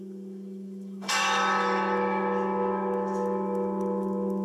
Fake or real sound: fake